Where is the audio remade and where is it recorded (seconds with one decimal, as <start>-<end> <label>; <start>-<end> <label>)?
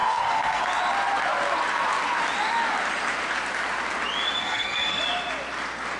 0.0-0.6 remade; 0.6-4.4 recorded; 4.4-5.0 remade; 5.0-6.0 recorded